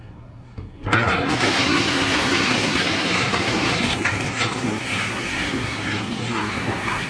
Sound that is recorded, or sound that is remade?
remade